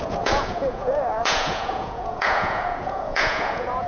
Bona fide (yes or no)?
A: no